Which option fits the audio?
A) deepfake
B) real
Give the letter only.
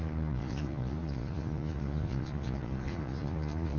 A